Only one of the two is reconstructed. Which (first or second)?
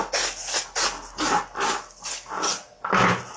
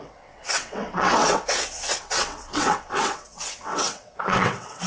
second